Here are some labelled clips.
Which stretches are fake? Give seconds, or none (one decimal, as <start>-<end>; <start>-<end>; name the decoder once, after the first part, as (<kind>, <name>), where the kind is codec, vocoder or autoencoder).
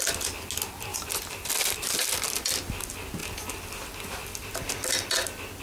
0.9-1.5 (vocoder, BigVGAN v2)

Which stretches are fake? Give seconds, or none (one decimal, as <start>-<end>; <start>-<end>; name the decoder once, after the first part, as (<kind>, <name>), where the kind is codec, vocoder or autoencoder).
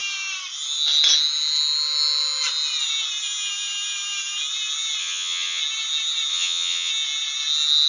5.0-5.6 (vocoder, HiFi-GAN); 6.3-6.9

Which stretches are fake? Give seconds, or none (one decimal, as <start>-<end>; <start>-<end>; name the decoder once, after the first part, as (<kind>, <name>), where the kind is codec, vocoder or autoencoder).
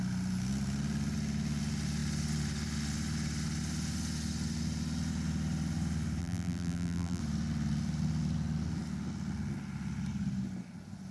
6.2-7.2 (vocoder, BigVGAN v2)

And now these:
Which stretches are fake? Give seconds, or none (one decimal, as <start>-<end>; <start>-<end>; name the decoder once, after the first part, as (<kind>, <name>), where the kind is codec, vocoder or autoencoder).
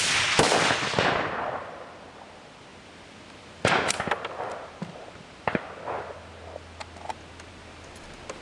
none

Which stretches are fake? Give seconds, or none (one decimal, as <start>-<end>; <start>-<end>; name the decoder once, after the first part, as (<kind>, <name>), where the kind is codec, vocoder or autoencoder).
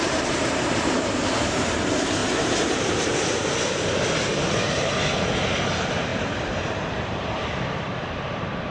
0.0-3.1 (vocoder, BigVGAN v2); 4.2-8.7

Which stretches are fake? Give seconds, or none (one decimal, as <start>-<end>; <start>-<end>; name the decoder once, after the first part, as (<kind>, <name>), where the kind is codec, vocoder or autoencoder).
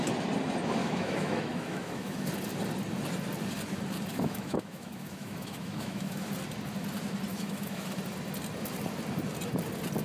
0.8-2.3 (autoencoder, DAC-VAE); 4.1-6.3; 7.3-8.0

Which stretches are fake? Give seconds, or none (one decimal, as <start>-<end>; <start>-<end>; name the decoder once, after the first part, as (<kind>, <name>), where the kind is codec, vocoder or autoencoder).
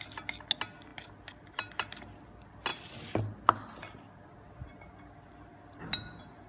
none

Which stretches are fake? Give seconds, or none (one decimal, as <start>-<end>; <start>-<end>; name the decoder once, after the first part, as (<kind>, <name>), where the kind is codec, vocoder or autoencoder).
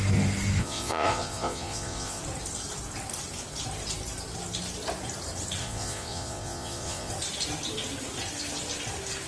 0.6-2.2 (vocoder, Vocos); 5.6-7.1